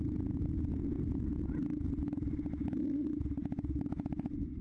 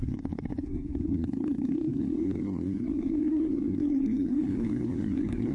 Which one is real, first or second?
first